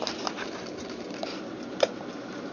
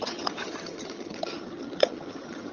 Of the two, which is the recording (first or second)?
first